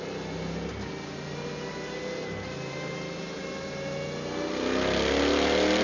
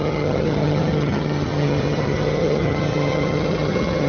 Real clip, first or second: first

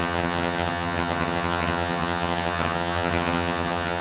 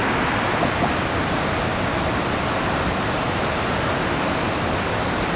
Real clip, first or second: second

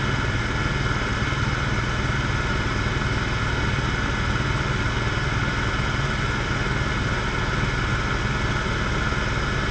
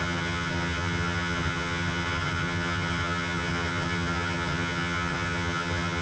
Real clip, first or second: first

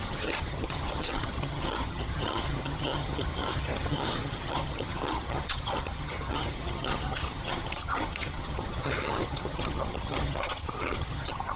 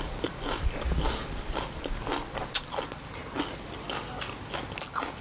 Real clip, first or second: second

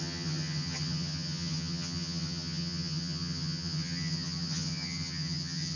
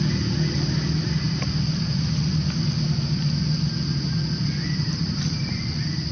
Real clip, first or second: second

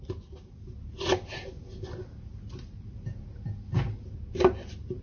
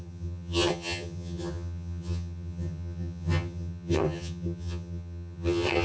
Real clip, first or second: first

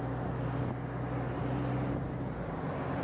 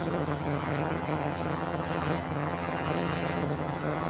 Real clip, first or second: first